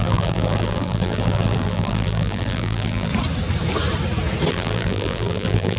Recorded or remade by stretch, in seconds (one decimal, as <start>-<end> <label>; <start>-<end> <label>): 0.0-3.1 remade; 3.1-4.5 recorded; 4.5-5.8 remade